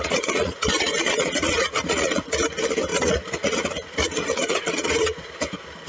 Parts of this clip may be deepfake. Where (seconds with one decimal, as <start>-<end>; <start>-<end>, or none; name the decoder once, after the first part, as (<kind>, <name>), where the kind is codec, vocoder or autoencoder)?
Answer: 0.0-2.3 (vocoder, Vocos); 2.9-5.3